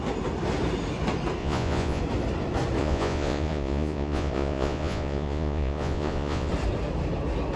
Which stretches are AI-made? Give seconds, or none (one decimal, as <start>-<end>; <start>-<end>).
1.4-2.0; 2.8-6.5